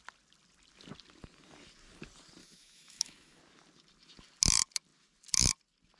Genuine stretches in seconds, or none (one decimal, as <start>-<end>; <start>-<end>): 0.0-2.4; 3.4-6.0